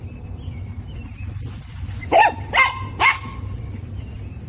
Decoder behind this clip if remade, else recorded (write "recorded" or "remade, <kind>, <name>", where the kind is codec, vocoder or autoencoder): remade, vocoder, BigVGAN v2